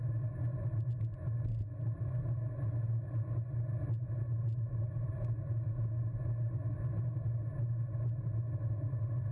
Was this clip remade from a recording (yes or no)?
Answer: no